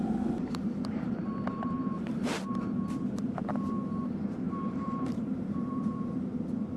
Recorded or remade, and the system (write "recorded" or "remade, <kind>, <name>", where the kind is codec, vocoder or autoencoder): remade, vocoder, BigVGAN v2